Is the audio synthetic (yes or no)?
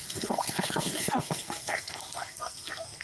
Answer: yes